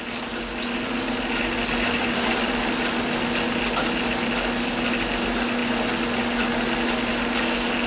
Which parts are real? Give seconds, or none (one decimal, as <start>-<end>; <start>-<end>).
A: 0.0-7.9